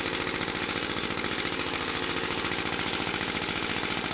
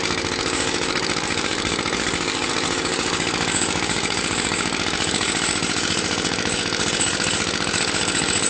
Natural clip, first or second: first